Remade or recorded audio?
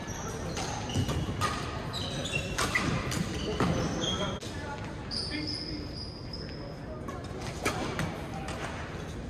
recorded